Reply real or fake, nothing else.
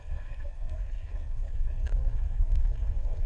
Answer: fake